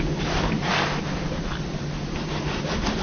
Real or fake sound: real